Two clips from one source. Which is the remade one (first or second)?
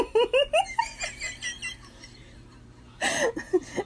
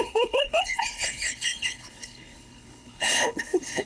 second